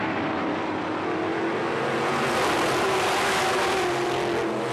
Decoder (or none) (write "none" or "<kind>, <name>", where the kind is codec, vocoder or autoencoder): none